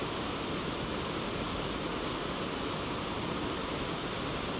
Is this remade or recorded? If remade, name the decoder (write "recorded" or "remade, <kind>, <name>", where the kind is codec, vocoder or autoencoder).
recorded